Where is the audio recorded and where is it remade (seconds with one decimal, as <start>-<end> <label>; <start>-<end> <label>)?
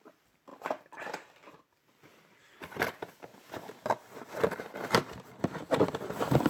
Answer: 0.0-0.5 remade; 0.5-1.6 recorded; 1.6-3.3 remade; 3.3-5.4 recorded; 5.4-6.5 remade